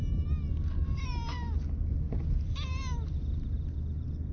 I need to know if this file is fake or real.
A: real